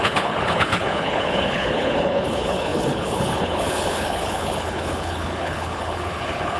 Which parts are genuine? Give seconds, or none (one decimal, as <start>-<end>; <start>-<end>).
none